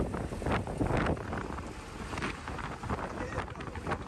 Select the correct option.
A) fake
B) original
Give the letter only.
B